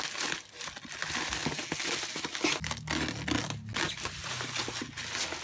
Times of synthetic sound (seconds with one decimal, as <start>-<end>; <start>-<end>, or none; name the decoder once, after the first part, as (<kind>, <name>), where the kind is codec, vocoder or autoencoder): none